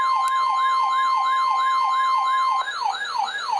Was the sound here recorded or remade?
recorded